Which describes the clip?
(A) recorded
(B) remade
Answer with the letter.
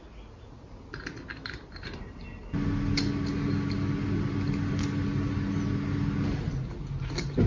A